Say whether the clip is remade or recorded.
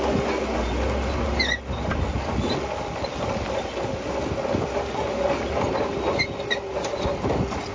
recorded